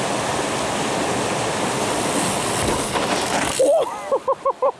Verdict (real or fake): real